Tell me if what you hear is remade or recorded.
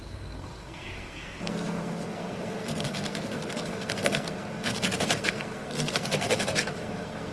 remade